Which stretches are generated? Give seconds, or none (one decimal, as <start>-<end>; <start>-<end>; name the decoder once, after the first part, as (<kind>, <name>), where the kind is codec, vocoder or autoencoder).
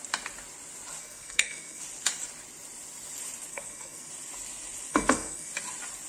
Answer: 1.0-1.8 (codec, SNAC); 3.5-4.1; 4.9-5.5